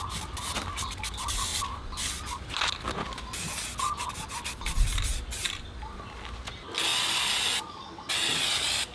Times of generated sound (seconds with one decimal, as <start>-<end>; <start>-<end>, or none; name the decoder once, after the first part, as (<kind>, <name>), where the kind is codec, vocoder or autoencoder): none